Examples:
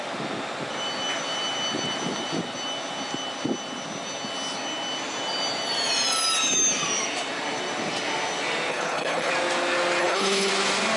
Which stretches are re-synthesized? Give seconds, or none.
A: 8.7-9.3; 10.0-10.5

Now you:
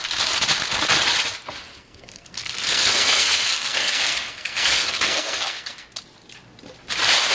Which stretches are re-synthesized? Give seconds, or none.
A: 1.7-5.9

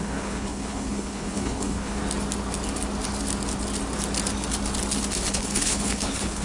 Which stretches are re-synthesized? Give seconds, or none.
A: 0.0-2.0; 5.3-6.4

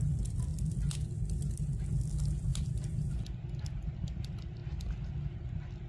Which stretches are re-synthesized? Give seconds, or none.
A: none